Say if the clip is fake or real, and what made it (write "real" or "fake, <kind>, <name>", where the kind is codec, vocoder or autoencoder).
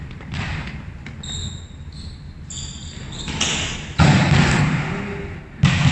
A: real